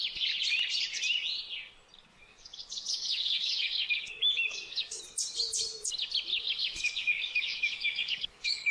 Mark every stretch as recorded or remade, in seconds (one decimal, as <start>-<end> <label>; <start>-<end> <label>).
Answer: 0.0-2.1 recorded; 2.1-5.0 remade; 5.0-6.3 recorded; 6.3-8.7 remade